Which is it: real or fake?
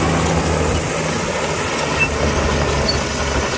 real